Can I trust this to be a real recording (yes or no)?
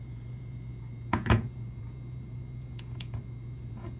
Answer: no